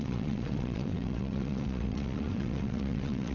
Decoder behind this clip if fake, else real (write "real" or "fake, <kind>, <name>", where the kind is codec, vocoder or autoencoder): fake, vocoder, WaveNeXt